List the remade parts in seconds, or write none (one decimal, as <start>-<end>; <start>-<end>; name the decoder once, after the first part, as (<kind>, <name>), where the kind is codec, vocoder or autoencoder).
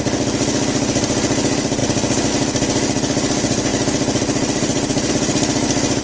none